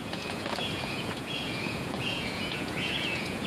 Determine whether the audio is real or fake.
fake